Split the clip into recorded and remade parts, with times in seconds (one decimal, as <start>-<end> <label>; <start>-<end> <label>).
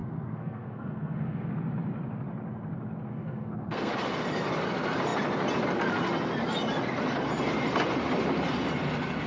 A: 0.0-1.5 remade; 1.5-3.1 recorded; 3.1-3.9 remade; 3.9-9.3 recorded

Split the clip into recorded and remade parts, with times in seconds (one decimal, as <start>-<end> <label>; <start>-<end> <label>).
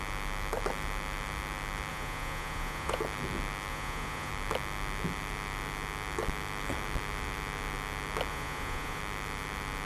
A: 0.0-1.9 recorded; 1.9-3.0 remade; 3.0-3.7 recorded; 3.7-4.3 remade; 4.3-8.3 recorded; 8.3-9.0 remade; 9.0-9.9 recorded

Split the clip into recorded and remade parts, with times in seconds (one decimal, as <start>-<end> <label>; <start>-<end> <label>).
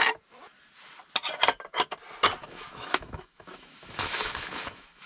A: 0.0-2.4 recorded; 2.4-5.1 remade